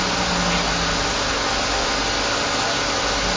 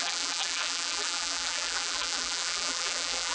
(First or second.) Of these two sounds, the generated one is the second